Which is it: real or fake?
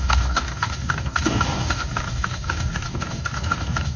fake